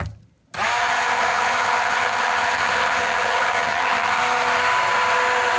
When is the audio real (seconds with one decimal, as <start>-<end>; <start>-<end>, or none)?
0.0-0.8; 4.2-5.6